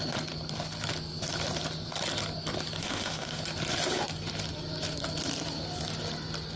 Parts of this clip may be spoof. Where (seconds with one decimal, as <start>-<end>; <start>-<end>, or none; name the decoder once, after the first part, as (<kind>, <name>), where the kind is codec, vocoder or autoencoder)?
2.8-3.4 (autoencoder, DAC-VAE)